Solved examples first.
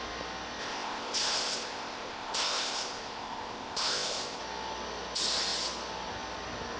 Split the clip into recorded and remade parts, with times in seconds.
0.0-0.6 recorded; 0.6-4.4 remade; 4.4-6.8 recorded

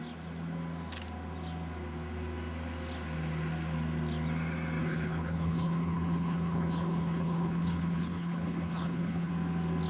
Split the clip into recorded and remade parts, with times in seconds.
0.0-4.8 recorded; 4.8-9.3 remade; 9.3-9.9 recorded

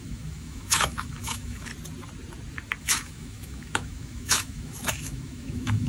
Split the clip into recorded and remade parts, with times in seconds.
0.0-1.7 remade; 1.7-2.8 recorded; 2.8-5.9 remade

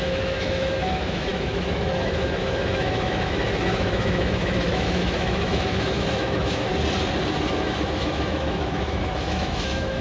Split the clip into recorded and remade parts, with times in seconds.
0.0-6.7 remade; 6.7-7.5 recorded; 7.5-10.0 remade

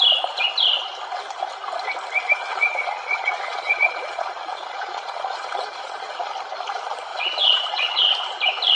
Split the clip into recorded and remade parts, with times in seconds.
0.0-2.5 recorded; 2.5-6.3 remade; 6.3-7.1 recorded; 7.1-8.0 remade; 8.0-8.8 recorded

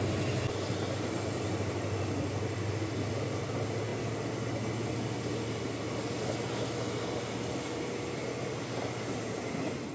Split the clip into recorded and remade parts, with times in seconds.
0.0-9.9 recorded